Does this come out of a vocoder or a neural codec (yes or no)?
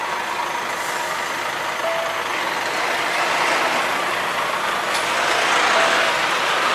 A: no